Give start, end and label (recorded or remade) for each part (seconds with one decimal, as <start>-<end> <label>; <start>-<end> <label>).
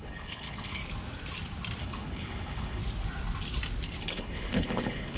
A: 0.0-0.8 remade; 0.8-1.8 recorded; 1.8-2.8 remade; 2.8-4.0 recorded; 4.0-5.2 remade